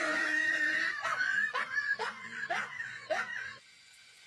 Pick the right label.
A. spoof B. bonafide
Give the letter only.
A